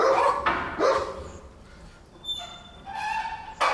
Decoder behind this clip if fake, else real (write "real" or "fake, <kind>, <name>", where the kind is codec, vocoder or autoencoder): real